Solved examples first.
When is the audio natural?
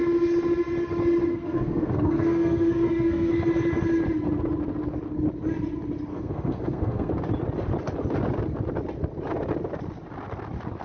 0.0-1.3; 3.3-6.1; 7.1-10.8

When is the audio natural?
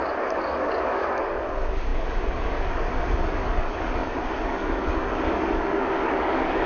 none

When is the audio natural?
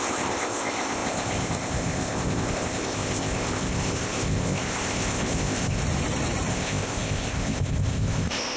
5.8-6.5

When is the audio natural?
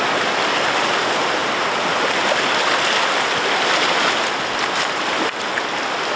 0.0-6.2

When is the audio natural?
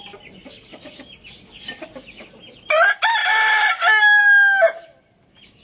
0.0-5.6